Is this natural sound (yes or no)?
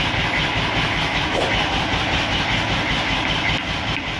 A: yes